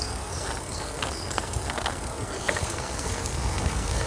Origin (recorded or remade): remade